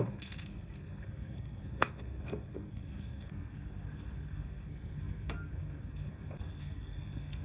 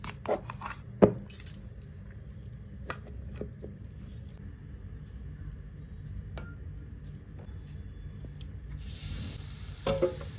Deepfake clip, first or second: first